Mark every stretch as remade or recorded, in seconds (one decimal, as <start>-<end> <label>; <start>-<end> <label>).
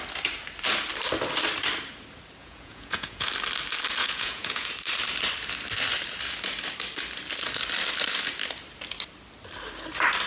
0.0-2.4 recorded; 2.4-3.3 remade; 3.3-4.0 recorded; 4.0-4.7 remade; 4.7-10.3 recorded